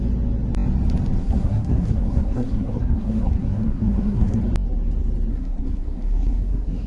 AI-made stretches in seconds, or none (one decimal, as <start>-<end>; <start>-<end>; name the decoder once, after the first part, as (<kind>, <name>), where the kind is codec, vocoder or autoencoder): 1.2-4.4 (codec, SNAC); 5.3-6.9